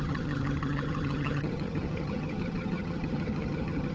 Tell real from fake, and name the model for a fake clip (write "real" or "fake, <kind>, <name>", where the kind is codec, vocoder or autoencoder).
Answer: fake, vocoder, HiFi-GAN